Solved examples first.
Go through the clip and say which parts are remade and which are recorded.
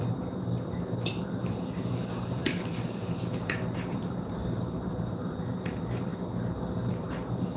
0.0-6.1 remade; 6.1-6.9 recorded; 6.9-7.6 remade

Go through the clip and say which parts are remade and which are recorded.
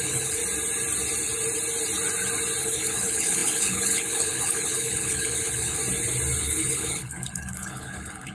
0.0-0.4 remade; 0.4-2.6 recorded; 2.6-5.8 remade; 5.8-6.4 recorded; 6.4-8.3 remade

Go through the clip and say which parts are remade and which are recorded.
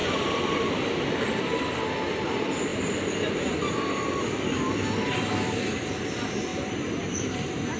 0.0-0.7 remade; 0.7-7.8 recorded